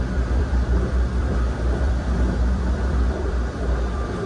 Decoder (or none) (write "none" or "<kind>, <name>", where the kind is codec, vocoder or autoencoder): vocoder, BigVGAN v2